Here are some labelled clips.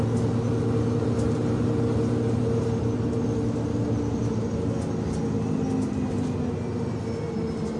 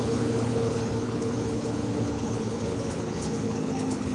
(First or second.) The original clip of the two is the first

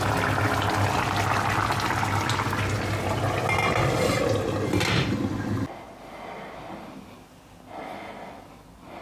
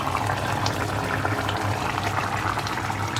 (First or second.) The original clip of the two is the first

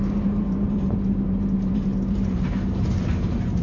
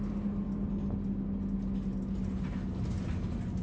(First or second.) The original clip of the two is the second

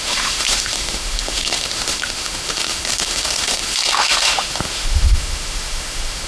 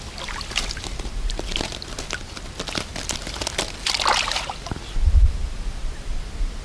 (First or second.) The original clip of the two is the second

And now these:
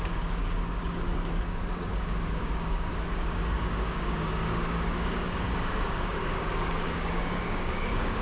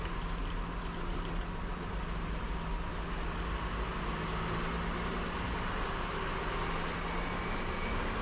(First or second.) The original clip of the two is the second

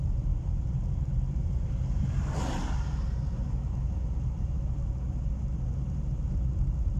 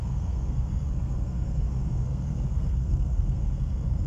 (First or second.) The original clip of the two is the first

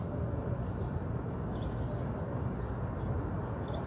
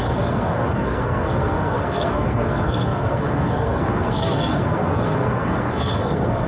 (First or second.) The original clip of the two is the first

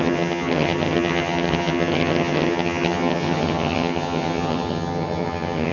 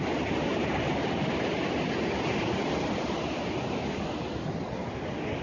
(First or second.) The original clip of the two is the second